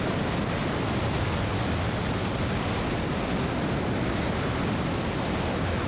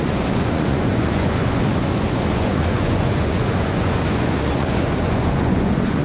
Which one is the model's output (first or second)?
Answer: second